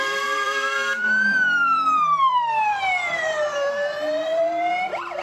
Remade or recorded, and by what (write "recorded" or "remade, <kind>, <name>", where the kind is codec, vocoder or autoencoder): remade, vocoder, BigVGAN v2